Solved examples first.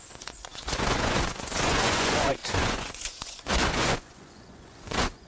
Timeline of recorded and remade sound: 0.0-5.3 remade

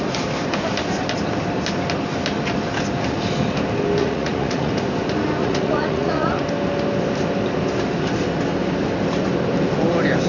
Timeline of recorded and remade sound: 0.0-4.0 recorded; 4.0-4.7 remade; 4.7-5.4 recorded; 5.4-6.4 remade; 6.4-10.3 recorded

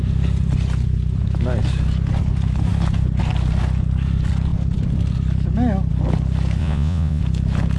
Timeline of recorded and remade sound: 0.0-6.6 recorded; 6.6-7.2 remade; 7.2-7.8 recorded

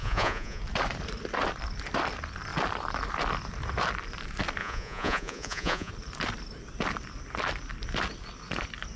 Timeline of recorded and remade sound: 0.0-0.6 remade; 0.6-4.6 recorded; 4.6-5.9 remade; 5.9-9.0 recorded

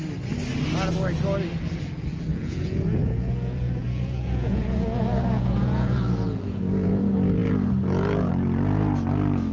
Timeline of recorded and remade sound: 0.0-2.3 recorded; 2.3-7.0 remade; 7.0-9.5 recorded

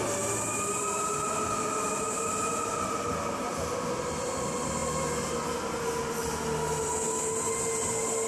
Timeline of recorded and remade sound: 0.0-8.3 recorded

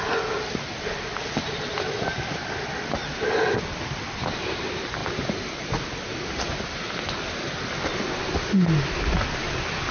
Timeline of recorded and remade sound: 0.0-9.9 recorded